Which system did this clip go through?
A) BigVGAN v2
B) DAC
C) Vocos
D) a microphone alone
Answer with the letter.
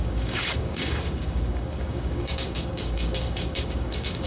B